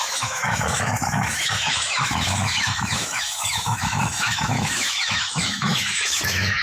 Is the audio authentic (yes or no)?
no